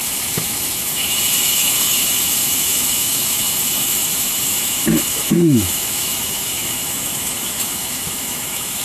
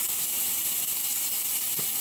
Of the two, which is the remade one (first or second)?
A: first